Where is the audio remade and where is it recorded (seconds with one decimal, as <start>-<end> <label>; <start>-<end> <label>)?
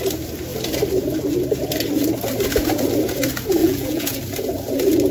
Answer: 0.0-3.6 recorded; 3.6-4.2 remade; 4.2-5.1 recorded